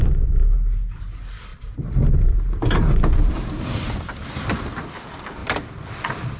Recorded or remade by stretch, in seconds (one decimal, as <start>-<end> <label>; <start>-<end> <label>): 0.0-1.5 recorded; 1.5-4.5 remade; 4.5-5.4 recorded; 5.4-6.4 remade